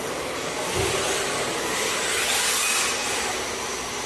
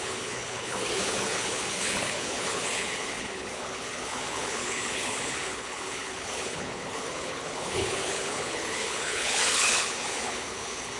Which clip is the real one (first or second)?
first